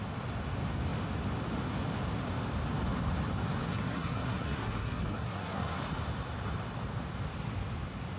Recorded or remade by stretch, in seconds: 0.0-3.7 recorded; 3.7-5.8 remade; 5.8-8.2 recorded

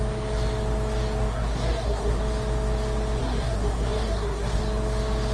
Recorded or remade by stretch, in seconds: 0.0-1.3 recorded; 1.3-2.2 remade; 2.2-3.2 recorded; 3.2-4.6 remade; 4.6-5.3 recorded

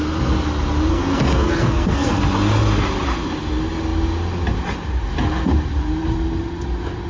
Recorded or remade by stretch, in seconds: 0.0-0.9 recorded; 0.9-2.2 remade; 2.2-7.1 recorded

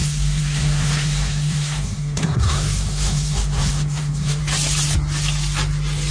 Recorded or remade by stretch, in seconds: 0.0-4.4 remade; 4.4-6.1 recorded

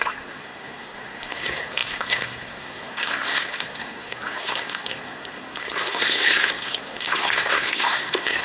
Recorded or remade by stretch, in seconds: 0.0-8.4 remade

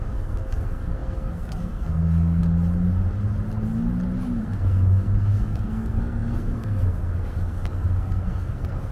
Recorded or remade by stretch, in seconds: 0.0-2.4 remade; 2.4-4.4 recorded; 4.4-8.9 remade

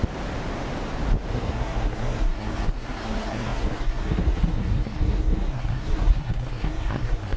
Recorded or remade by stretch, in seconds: 0.0-1.3 recorded; 1.3-7.4 remade

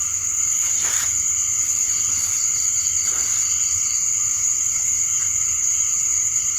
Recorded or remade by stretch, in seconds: 0.0-6.6 recorded